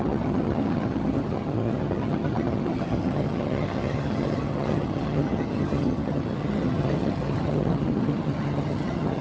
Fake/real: fake